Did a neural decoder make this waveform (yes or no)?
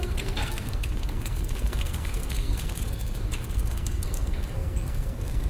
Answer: yes